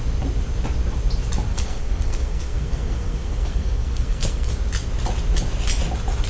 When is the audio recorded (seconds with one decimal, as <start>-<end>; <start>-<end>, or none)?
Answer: 0.0-1.5; 4.5-6.3